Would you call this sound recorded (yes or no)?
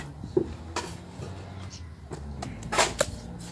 yes